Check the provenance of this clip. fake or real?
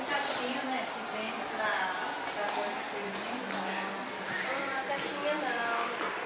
real